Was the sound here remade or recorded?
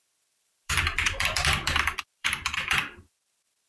remade